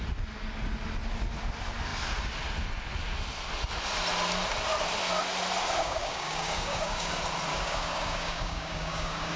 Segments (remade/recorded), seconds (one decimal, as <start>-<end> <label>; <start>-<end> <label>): 0.0-5.8 recorded; 5.8-7.1 remade; 7.1-7.5 recorded; 7.5-9.4 remade